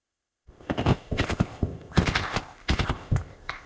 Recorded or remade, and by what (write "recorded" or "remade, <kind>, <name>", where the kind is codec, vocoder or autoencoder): remade, codec, ZipCodec